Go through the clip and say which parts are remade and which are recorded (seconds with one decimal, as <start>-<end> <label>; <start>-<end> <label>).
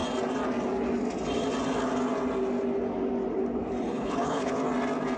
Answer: 0.0-3.9 recorded; 3.9-4.5 remade; 4.5-5.2 recorded